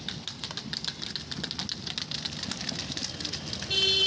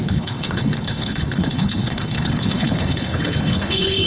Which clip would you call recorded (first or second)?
first